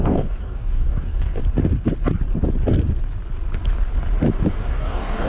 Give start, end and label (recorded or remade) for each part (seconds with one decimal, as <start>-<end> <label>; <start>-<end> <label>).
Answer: 0.0-1.4 remade; 1.4-4.5 recorded; 4.5-5.3 remade